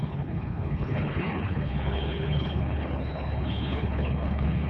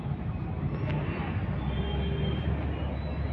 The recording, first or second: second